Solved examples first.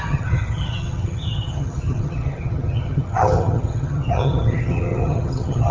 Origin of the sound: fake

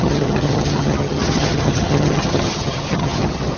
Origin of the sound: fake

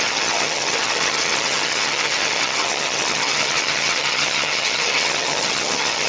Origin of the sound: fake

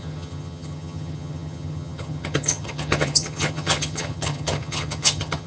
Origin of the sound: fake